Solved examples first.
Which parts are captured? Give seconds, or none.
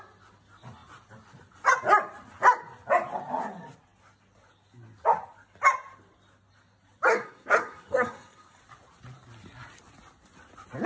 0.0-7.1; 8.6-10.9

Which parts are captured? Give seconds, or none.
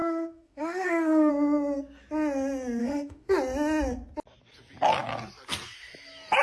1.3-2.8; 3.3-6.4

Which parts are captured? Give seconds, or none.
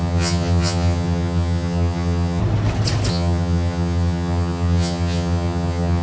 2.4-3.1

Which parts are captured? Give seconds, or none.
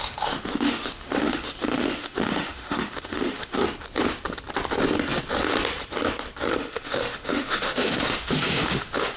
3.6-6.5